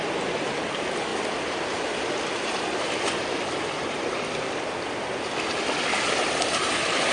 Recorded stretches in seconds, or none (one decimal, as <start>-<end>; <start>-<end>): 0.0-7.1